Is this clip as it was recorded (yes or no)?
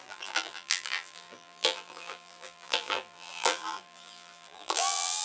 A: no